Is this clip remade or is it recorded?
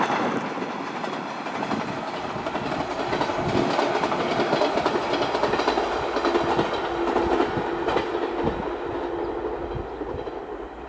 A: recorded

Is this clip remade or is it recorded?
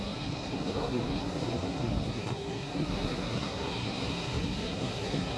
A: remade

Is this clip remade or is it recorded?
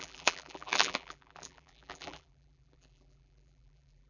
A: remade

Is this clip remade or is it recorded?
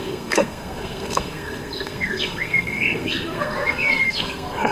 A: remade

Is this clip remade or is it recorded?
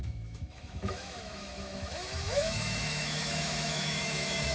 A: remade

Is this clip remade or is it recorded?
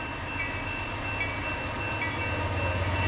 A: recorded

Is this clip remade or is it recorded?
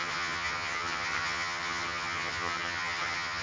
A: remade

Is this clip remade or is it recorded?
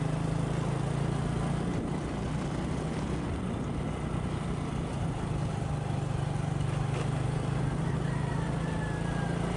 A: recorded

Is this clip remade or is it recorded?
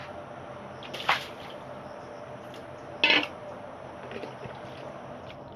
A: recorded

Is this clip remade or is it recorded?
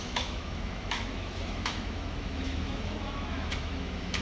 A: remade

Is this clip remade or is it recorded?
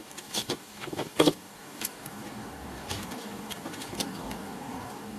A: remade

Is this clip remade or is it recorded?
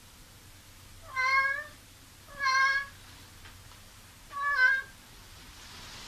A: recorded